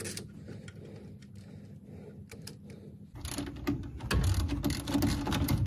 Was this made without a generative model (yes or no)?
yes